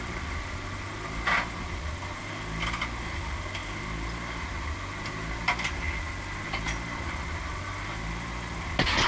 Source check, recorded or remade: recorded